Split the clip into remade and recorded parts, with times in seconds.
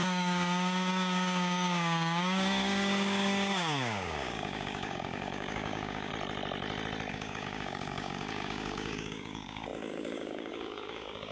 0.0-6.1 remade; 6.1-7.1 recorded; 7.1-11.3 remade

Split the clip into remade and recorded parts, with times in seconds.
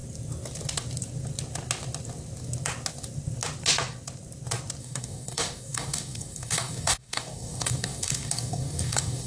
0.0-4.8 recorded; 4.8-9.3 remade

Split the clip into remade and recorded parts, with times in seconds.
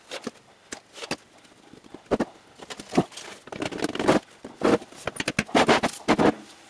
0.0-6.7 recorded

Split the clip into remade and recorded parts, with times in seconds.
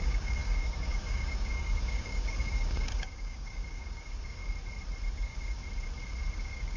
0.0-4.4 remade; 4.4-5.1 recorded; 5.1-5.6 remade; 5.6-6.3 recorded; 6.3-6.8 remade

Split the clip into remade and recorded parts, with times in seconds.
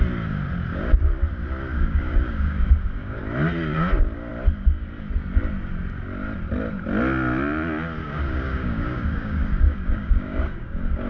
0.0-1.7 recorded; 1.7-3.2 remade; 3.2-8.0 recorded; 8.0-11.1 remade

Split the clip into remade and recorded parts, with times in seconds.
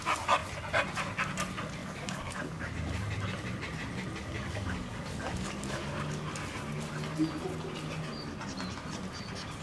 0.0-1.8 recorded; 1.8-2.7 remade; 2.7-4.2 recorded; 4.2-6.2 remade; 6.2-9.6 recorded